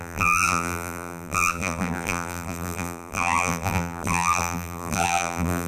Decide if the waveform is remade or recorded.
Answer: remade